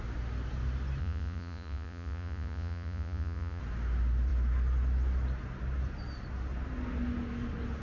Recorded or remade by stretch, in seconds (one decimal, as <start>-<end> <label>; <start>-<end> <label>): 0.0-1.0 recorded; 1.0-3.6 remade; 3.6-7.8 recorded